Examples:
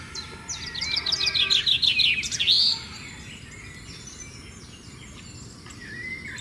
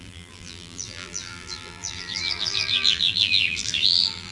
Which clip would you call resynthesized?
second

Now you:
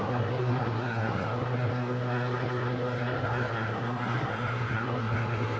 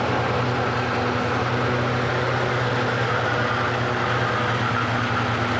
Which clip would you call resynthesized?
first